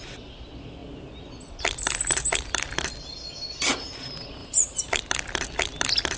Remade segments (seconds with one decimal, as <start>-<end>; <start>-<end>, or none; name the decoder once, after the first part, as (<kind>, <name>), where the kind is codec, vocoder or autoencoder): 4.4-5.0 (vocoder, BigVGAN v2)